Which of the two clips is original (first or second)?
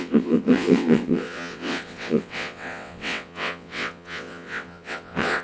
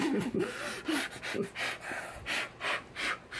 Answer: second